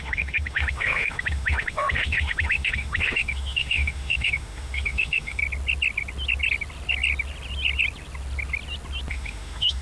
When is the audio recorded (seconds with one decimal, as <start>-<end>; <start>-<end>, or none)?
5.4-9.1